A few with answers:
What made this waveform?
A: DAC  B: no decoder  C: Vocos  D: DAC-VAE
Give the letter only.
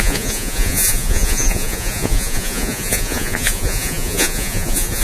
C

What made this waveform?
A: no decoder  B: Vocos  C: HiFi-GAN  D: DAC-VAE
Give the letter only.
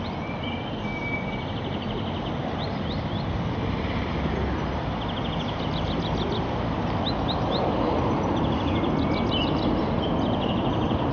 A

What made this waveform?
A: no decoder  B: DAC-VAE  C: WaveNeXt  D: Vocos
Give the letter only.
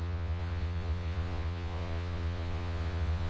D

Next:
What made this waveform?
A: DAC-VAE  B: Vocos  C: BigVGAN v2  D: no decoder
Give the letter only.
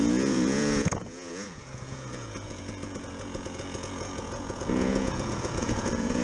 B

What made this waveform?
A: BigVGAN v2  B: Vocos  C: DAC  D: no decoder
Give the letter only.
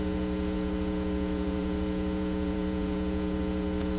B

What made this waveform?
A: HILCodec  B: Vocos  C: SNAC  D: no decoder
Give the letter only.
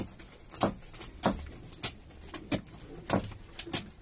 D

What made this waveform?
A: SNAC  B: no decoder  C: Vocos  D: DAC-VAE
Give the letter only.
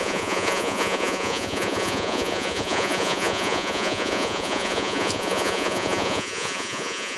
C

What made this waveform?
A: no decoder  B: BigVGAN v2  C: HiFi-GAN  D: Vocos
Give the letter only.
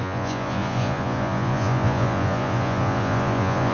D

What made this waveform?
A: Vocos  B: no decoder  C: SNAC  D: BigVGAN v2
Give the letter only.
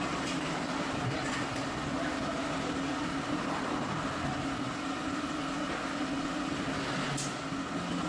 B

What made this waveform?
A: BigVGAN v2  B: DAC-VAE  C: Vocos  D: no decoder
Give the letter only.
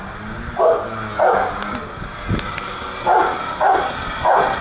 D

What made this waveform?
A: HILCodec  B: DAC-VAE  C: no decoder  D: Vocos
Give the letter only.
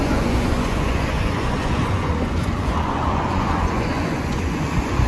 D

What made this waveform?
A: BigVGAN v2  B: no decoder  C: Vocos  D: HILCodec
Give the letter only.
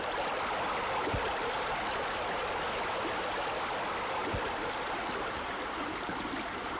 B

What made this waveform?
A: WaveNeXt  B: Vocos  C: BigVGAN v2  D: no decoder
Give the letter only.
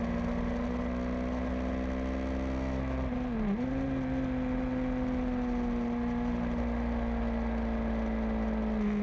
D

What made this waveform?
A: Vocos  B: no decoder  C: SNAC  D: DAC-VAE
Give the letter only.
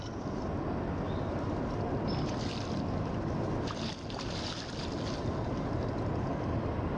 B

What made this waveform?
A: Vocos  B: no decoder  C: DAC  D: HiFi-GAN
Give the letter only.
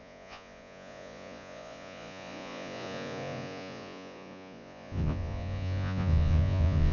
A